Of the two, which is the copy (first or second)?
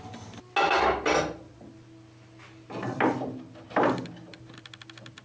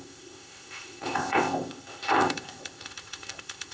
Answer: second